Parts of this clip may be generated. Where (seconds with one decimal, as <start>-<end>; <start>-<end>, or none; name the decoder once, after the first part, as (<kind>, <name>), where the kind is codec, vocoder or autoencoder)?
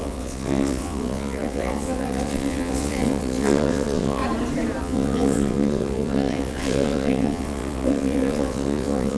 0.0-4.2 (vocoder, WaveNeXt); 4.8-9.2